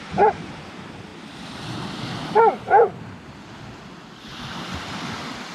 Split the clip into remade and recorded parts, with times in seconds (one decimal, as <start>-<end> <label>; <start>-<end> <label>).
0.0-1.1 remade; 1.1-3.6 recorded; 3.6-5.5 remade